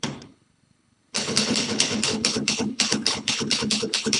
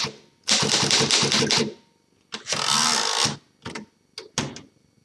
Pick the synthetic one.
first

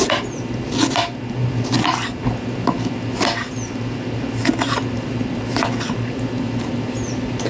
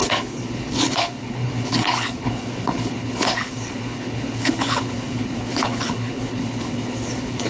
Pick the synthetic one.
second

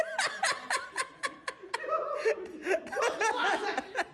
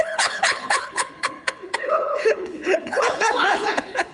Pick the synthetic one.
second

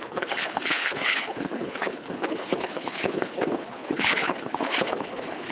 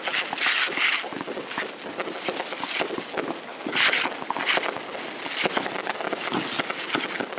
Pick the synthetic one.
first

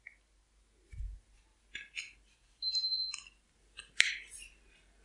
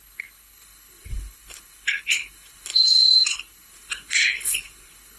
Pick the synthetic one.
second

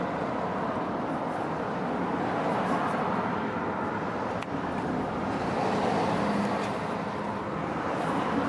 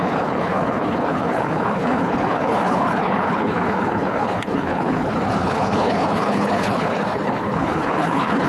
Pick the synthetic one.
second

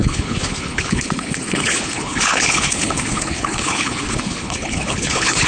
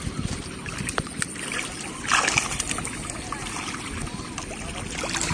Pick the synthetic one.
first